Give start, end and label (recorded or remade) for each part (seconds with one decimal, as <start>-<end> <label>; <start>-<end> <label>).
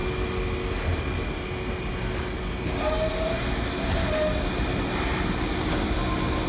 0.0-6.5 recorded